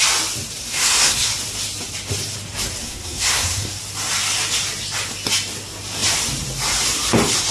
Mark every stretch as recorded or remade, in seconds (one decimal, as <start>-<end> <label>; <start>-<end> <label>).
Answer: 0.0-0.6 recorded; 0.6-1.3 remade; 1.3-2.8 recorded; 2.8-3.8 remade; 3.8-7.5 recorded